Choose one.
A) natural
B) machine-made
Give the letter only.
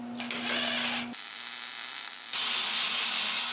A